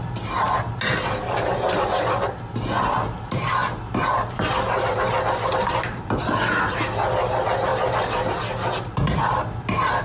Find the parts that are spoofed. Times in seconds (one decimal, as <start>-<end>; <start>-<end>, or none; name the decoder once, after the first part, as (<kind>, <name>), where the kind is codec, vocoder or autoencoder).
none